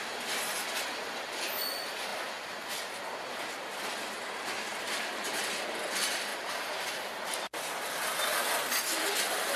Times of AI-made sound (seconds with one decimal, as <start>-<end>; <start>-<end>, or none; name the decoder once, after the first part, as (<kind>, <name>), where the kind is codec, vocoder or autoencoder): 4.7-5.8 (vocoder, BigVGAN v2); 6.3-7.3